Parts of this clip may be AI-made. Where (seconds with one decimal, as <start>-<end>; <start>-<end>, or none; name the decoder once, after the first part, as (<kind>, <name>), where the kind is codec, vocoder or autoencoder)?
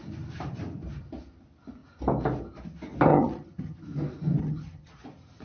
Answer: 3.1-3.8 (vocoder, HiFi-GAN); 4.4-4.9